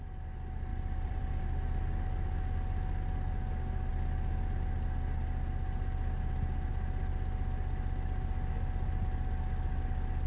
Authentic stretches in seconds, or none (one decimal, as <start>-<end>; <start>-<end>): 0.0-0.7; 1.4-10.3